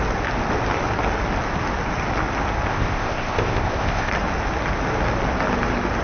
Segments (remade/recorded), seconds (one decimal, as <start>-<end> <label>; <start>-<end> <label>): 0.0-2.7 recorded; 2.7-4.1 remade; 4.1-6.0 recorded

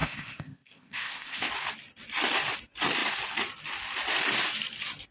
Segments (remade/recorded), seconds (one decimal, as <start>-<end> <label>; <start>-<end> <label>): 0.0-1.5 remade; 1.5-5.1 recorded

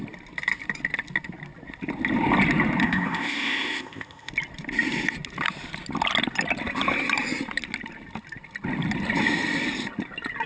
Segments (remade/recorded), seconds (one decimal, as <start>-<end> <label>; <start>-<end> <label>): 0.0-2.8 recorded; 2.8-4.3 remade; 4.3-10.5 recorded

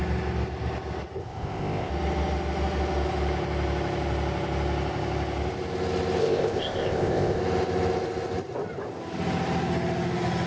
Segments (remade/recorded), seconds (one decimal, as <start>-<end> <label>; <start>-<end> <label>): 0.0-1.2 recorded; 1.2-1.9 remade; 1.9-6.2 recorded; 6.2-7.4 remade; 7.4-10.5 recorded

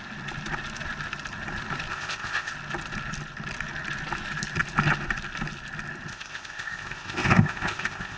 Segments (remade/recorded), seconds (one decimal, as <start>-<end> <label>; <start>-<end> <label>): 0.0-1.9 recorded; 1.9-2.5 remade; 2.5-6.1 recorded; 6.1-8.2 remade

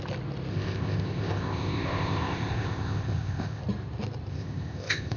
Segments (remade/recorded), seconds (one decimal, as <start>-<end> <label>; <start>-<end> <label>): 0.0-0.5 recorded; 0.5-3.6 remade; 3.6-4.3 recorded; 4.3-5.2 remade